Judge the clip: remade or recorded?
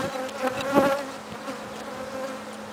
recorded